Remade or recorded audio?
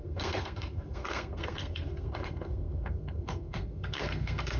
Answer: remade